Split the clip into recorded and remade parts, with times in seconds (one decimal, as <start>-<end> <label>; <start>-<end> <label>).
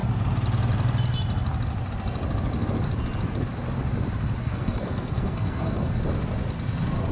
0.0-4.4 recorded; 4.4-6.0 remade; 6.0-7.1 recorded